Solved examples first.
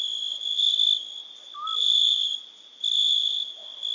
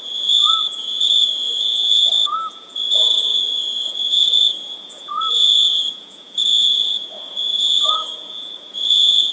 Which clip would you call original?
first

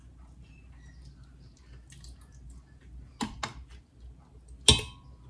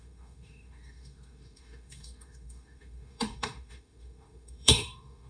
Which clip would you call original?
first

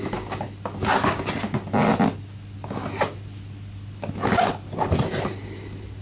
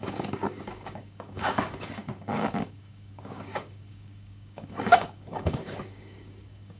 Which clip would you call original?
first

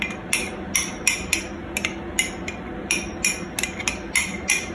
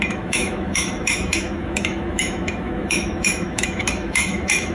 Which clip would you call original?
first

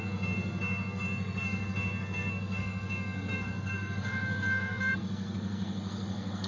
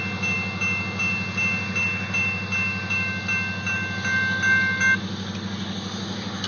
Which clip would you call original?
second